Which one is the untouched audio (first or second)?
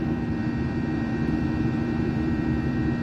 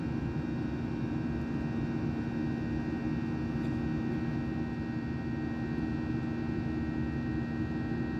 second